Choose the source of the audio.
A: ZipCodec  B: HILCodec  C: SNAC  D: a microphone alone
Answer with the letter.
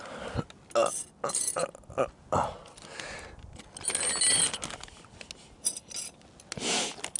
D